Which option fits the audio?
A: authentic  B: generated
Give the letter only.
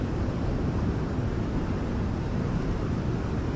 A